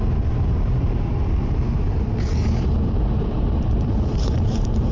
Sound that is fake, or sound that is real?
fake